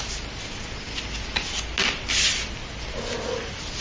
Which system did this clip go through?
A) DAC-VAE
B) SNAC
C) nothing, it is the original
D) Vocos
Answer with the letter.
C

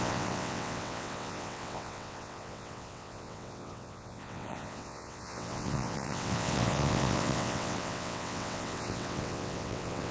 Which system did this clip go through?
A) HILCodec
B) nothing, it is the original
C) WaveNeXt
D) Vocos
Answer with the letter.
C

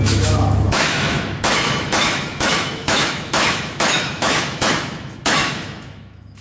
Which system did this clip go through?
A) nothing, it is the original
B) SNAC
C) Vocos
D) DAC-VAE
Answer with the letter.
D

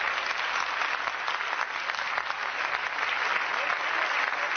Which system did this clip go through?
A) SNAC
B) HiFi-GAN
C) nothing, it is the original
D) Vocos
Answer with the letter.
C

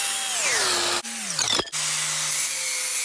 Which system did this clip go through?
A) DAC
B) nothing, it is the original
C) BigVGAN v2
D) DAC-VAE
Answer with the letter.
B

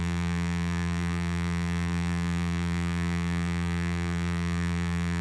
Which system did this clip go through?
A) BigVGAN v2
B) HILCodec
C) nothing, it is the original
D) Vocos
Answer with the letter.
A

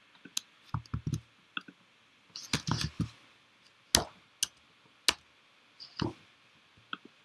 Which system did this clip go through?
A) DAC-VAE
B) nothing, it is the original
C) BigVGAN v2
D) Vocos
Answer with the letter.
B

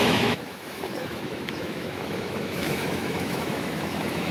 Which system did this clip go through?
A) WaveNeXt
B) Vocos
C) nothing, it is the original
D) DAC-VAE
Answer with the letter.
D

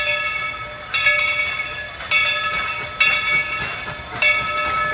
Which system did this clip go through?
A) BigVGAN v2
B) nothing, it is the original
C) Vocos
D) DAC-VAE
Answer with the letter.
B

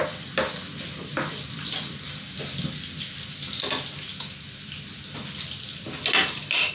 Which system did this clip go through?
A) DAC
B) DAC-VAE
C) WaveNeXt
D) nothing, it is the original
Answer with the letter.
D